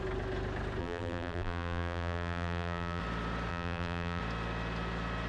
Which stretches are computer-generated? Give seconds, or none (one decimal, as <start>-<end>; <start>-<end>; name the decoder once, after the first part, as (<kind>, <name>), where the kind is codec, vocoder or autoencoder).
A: 0.8-3.0 (vocoder, BigVGAN v2); 3.5-4.2